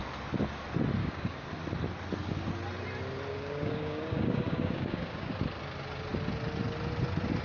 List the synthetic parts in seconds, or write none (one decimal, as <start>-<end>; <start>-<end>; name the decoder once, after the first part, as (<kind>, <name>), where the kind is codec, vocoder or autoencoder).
1.0-1.5 (codec, DAC); 3.3-5.3